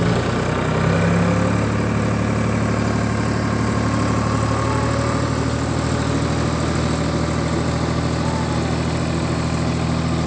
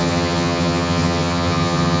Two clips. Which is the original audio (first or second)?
first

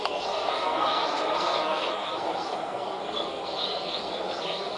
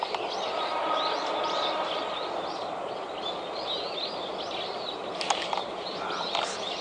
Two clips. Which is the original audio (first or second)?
second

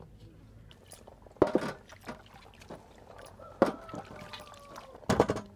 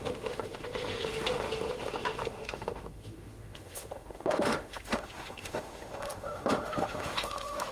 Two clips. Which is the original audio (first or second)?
first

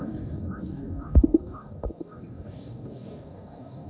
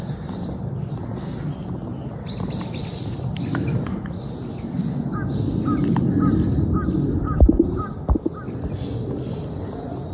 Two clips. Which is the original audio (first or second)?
second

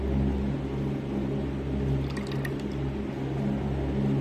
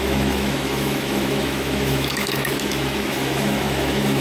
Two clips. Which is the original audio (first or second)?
first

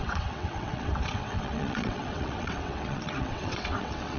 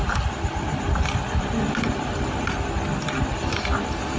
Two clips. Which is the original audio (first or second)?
second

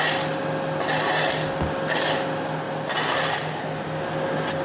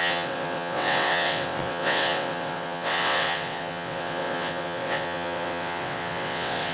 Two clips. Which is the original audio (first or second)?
first